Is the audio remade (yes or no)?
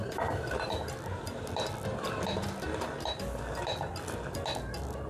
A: yes